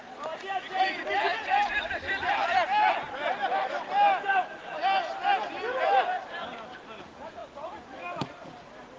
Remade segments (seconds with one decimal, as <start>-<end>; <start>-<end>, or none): none